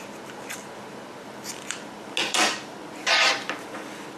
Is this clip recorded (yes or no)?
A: yes